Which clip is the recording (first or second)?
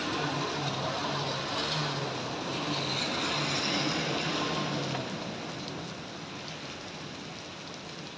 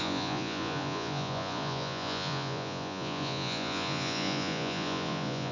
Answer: first